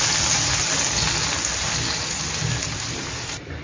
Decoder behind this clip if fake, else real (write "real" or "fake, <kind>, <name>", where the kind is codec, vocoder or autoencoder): real